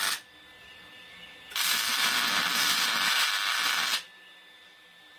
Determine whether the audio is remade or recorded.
remade